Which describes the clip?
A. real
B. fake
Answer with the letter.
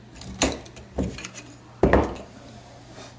A